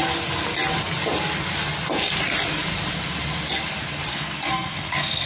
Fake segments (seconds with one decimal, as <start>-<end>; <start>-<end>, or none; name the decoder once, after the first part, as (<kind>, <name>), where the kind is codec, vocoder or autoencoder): 4.1-5.3 (codec, SNAC)